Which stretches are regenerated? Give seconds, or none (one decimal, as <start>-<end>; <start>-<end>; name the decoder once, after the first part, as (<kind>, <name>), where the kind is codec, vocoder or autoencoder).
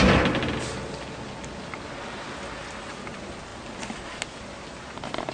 none